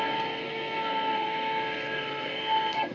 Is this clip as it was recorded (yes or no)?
no